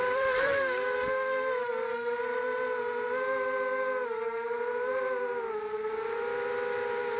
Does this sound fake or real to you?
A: fake